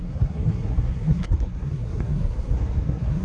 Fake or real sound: fake